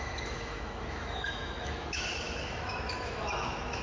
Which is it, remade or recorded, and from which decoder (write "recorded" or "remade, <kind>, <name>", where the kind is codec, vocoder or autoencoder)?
remade, autoencoder, DAC-VAE